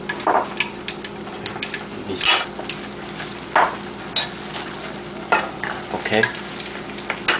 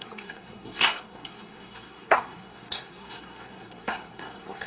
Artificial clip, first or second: second